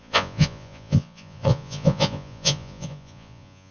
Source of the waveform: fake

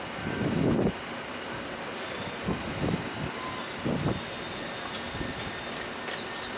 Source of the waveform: real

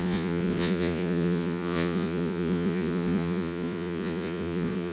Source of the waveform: fake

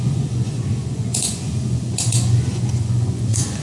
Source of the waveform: fake